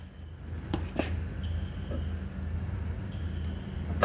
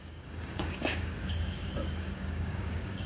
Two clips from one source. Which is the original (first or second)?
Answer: first